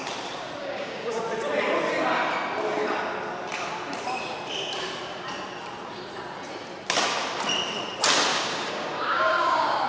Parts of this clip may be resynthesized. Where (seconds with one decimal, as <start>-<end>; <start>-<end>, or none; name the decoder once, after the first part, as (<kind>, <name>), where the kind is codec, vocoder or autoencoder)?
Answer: 0.6-1.2 (codec, DAC); 8.3-9.9